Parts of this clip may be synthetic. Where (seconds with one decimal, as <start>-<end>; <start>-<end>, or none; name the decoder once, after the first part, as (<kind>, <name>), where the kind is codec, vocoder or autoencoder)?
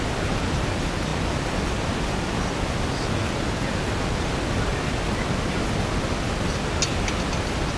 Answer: none